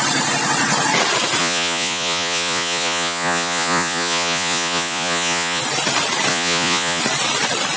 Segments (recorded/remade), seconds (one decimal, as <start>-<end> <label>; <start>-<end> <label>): 0.0-1.4 recorded; 1.4-5.6 remade; 5.6-6.3 recorded; 6.3-7.0 remade; 7.0-7.8 recorded